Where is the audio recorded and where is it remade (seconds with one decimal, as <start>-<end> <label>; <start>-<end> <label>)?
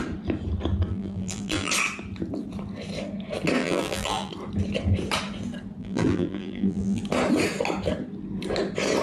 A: 0.0-0.9 recorded; 0.9-1.7 remade; 1.7-3.6 recorded; 3.6-4.3 remade; 4.3-5.8 recorded; 5.8-7.0 remade; 7.0-9.0 recorded